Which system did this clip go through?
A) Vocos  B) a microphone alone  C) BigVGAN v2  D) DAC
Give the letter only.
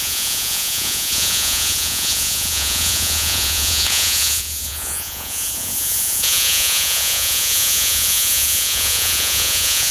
A